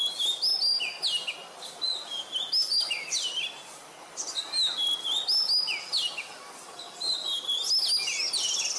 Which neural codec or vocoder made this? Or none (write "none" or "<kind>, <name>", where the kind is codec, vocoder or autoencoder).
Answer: none